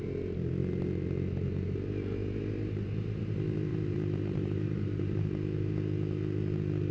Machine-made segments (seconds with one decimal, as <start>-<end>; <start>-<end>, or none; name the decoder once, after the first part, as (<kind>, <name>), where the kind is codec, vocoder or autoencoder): 3.7-5.3 (vocoder, BigVGAN v2)